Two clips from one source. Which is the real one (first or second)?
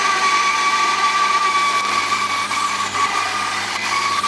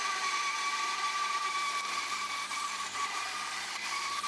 first